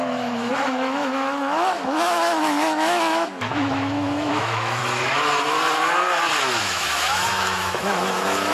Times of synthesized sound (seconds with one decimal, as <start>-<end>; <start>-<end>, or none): 0.0-4.8; 6.6-8.5